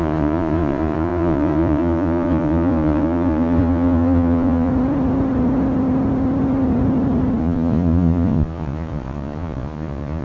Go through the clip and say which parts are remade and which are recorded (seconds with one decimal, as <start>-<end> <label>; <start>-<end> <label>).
0.0-4.7 remade; 4.7-7.4 recorded; 7.4-10.2 remade